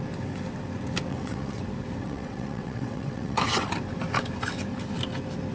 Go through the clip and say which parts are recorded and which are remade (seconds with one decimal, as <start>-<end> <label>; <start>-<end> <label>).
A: 0.0-1.1 recorded; 1.1-1.6 remade; 1.6-2.0 recorded; 2.0-3.7 remade; 3.7-5.5 recorded